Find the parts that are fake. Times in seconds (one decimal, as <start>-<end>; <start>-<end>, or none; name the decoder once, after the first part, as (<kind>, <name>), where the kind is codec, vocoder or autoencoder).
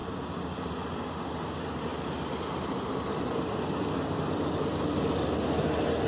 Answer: none